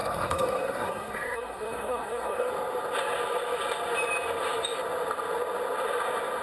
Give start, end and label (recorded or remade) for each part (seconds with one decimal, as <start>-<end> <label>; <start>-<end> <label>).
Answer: 0.0-2.5 remade; 2.5-6.4 recorded